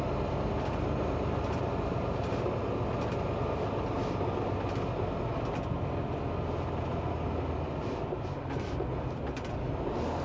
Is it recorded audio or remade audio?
recorded